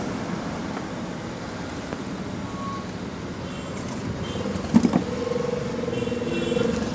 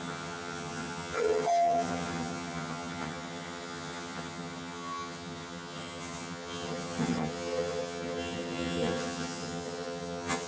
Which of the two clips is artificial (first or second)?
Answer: second